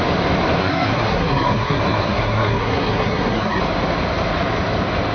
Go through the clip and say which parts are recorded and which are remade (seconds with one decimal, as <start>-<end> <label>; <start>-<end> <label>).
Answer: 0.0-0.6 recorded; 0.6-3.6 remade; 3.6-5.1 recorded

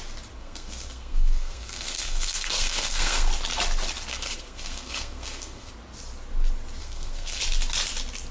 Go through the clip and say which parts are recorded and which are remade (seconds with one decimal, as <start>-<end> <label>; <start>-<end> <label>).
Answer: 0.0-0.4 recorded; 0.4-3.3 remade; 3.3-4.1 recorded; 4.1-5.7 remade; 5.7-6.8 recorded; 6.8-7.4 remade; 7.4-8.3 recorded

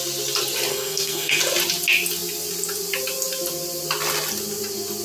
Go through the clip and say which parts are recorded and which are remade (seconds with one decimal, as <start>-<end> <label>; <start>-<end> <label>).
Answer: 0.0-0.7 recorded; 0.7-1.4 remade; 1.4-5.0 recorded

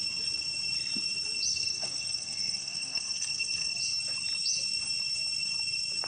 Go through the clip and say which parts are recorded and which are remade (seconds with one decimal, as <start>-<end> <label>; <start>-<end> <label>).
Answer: 0.0-1.5 recorded; 1.5-3.8 remade; 3.8-6.1 recorded